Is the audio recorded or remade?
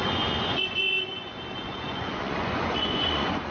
remade